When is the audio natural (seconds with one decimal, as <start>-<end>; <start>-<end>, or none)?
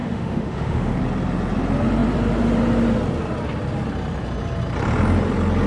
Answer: 1.0-5.7